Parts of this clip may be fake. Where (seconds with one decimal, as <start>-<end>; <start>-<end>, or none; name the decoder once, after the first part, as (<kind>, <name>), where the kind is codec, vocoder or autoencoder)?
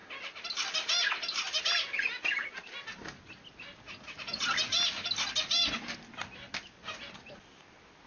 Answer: none